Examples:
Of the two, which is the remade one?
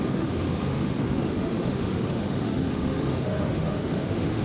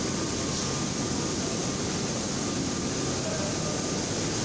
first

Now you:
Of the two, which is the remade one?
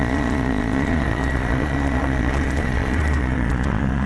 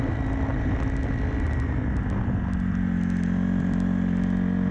first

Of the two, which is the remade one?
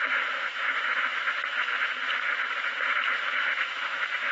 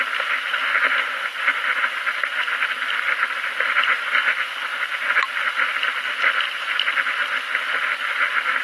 first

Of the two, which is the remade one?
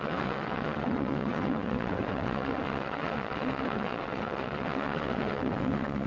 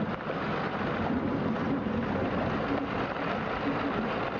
first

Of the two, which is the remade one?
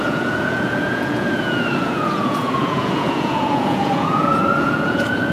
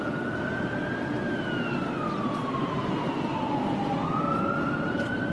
first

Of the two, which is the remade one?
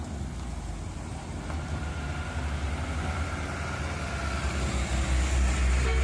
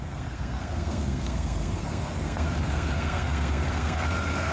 second